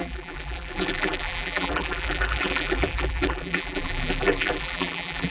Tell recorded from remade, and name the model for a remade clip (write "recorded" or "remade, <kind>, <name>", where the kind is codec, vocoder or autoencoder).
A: remade, vocoder, BigVGAN v2